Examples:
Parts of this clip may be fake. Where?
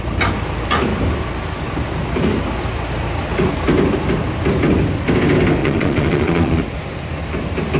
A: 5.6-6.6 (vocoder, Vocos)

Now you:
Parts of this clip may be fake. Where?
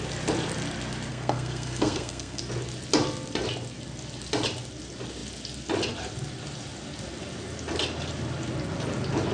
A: 1.1-2.4 (codec, SNAC)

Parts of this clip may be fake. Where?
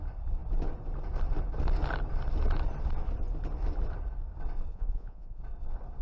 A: 4.7-5.4 (vocoder, Vocos)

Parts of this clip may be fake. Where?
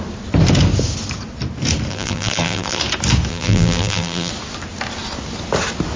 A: 1.9-2.8 (vocoder, BigVGAN v2); 3.3-4.3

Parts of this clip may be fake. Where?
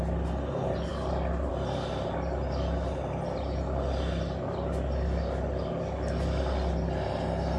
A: none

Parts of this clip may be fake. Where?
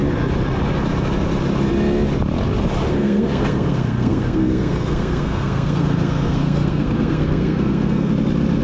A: 2.9-8.1 (codec, SNAC)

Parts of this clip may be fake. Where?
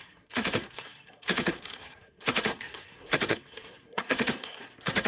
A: 0.0-5.1 (codec, SNAC)